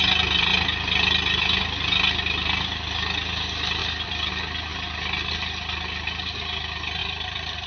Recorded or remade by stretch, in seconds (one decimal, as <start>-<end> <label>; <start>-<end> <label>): 0.0-3.8 recorded; 3.8-4.3 remade; 4.3-7.0 recorded; 7.0-7.7 remade